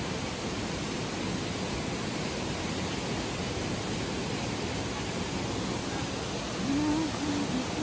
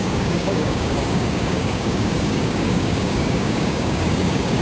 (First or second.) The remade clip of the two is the second